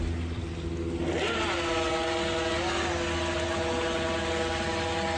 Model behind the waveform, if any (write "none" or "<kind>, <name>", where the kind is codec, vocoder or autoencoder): none